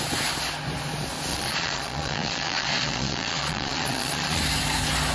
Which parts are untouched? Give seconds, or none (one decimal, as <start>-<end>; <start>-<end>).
0.0-1.3; 4.4-5.1